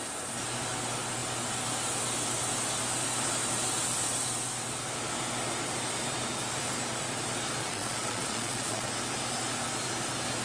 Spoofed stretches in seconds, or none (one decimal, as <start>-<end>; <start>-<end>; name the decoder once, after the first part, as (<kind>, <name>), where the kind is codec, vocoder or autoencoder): 7.6-8.9 (vocoder, Vocos)